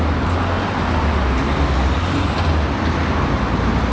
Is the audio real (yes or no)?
yes